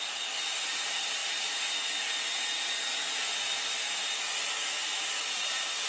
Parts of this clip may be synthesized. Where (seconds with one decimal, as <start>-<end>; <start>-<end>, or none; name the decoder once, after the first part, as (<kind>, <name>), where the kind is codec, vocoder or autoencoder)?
none